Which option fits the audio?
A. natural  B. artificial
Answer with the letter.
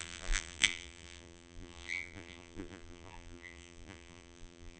B